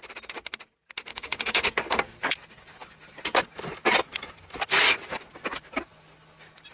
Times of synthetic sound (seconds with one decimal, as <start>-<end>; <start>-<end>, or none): 1.1-1.9